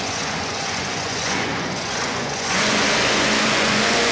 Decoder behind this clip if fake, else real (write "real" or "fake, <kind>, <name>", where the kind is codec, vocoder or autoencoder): fake, vocoder, Vocos